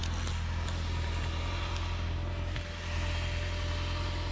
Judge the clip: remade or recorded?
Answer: recorded